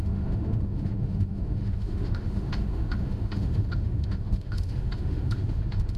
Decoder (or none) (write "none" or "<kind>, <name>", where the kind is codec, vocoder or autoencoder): autoencoder, DAC-VAE